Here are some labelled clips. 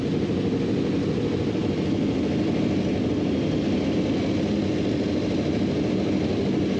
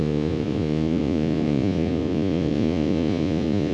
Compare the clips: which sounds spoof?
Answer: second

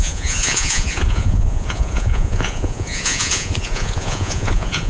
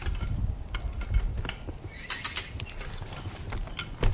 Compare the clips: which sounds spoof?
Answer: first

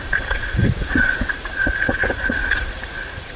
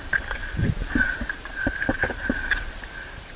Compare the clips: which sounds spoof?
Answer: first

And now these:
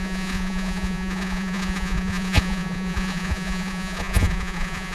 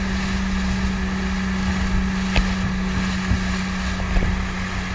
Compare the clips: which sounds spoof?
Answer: first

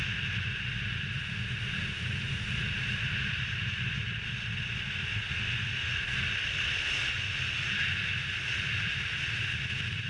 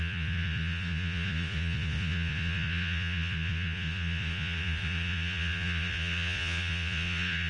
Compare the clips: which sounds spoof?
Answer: second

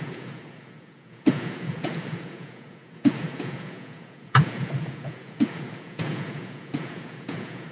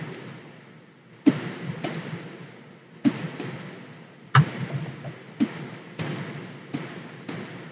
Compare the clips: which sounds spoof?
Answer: first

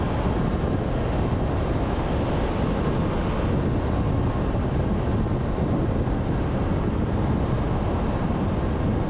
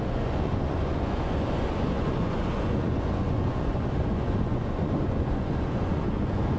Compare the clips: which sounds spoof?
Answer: second